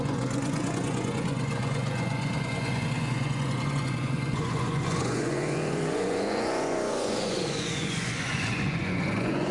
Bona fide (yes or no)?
no